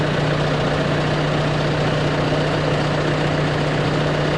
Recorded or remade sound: recorded